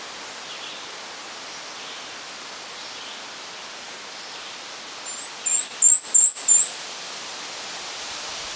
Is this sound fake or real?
real